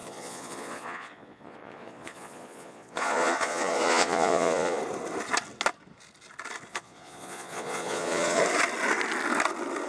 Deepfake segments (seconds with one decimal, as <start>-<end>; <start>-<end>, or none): 0.0-4.8; 6.7-8.4